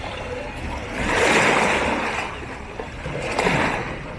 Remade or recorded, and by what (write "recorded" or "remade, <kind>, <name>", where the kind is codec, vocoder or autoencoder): recorded